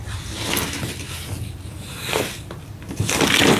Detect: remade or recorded recorded